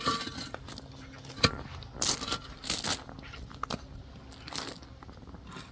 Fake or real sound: real